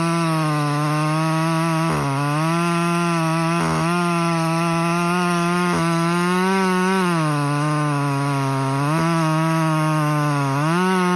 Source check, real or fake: fake